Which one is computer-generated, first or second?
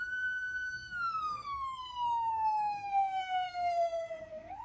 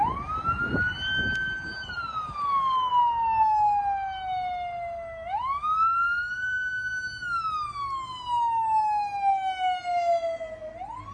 first